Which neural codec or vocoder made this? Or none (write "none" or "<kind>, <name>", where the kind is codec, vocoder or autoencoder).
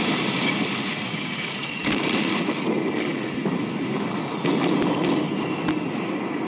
none